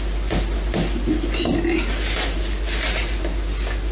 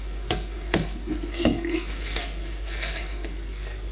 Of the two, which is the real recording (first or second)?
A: first